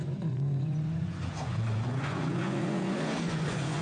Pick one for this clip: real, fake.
fake